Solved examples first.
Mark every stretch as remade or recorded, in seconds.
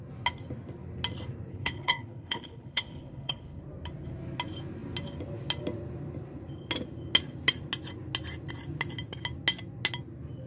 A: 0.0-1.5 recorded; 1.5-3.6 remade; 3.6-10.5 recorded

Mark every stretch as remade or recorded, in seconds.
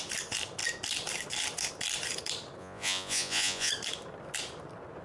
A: 0.0-2.6 recorded; 2.6-3.7 remade; 3.7-5.0 recorded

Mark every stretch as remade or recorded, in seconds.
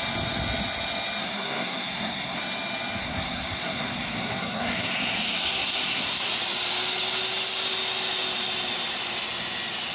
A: 0.0-1.2 recorded; 1.2-2.4 remade; 2.4-3.0 recorded; 3.0-6.2 remade; 6.2-9.9 recorded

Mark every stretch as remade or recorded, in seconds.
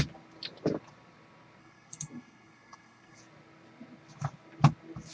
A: 0.0-1.6 recorded; 1.6-3.2 remade; 3.2-5.1 recorded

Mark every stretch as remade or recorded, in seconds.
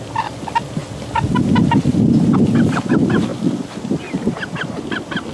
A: 0.0-5.3 recorded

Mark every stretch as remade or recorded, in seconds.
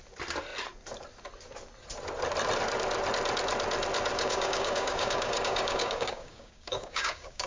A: 0.0-4.1 recorded; 4.1-7.5 remade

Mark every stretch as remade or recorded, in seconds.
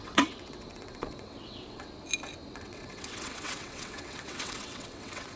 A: 0.0-1.9 remade; 1.9-2.5 recorded; 2.5-5.4 remade